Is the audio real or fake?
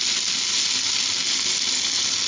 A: real